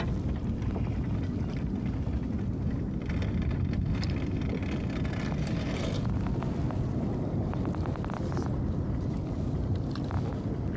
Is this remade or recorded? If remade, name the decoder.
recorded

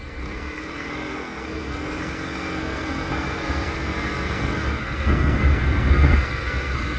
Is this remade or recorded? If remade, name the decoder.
remade, codec, SNAC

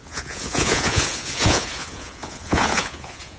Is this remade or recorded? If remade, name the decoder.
remade, vocoder, Vocos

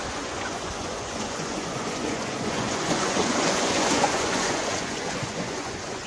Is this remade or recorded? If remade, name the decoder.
remade, vocoder, Vocos